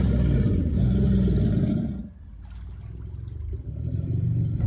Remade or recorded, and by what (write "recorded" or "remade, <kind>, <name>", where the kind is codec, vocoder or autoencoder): recorded